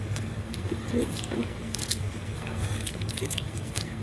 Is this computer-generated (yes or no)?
yes